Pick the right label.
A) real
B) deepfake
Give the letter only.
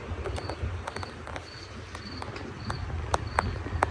A